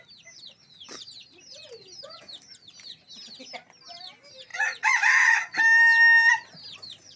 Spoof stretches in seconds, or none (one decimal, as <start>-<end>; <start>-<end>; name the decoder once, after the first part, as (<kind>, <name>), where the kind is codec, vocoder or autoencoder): 4.5-5.6 (vocoder, Vocos)